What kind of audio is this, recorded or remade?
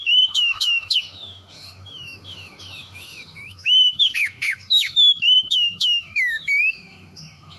remade